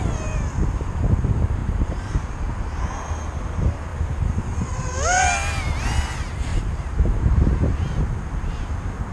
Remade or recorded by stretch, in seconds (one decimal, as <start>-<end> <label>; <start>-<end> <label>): 0.0-1.6 recorded; 1.6-2.8 remade; 2.8-6.5 recorded; 6.5-7.5 remade; 7.5-9.1 recorded